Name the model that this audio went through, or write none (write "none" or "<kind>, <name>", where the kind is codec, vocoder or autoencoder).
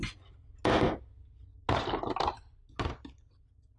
none